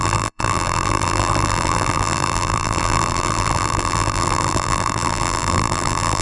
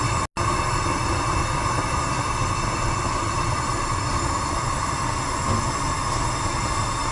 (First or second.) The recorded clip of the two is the second